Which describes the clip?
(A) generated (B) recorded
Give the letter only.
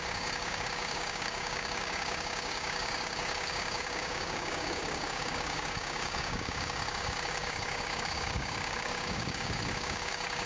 A